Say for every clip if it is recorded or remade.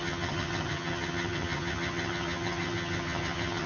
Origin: remade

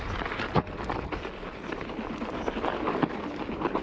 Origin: recorded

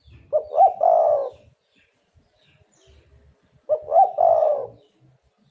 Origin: recorded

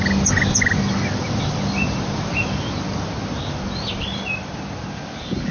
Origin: recorded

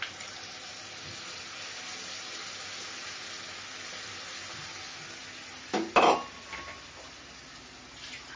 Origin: recorded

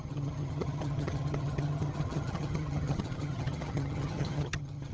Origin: remade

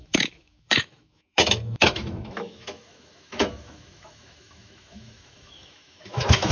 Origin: remade